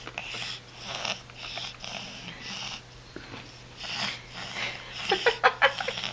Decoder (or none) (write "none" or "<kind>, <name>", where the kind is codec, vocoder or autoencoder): none